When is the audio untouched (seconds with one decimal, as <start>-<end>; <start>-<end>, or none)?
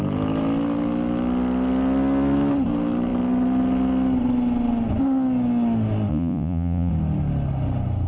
0.0-6.1; 6.9-8.1